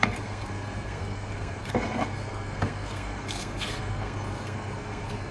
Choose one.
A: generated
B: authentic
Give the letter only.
A